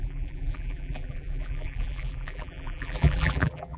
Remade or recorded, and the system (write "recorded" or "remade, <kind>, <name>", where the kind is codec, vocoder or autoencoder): remade, vocoder, BigVGAN v2